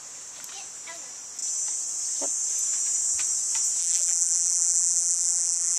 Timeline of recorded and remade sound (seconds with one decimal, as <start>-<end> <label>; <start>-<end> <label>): 0.0-3.8 recorded; 3.8-5.8 remade